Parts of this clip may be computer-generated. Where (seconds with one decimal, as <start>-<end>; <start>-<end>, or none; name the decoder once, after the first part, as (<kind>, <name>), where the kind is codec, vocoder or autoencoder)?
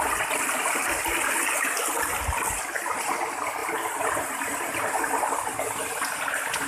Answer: 3.6-4.8 (vocoder, BigVGAN v2)